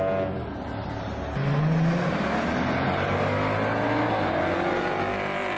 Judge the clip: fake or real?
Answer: real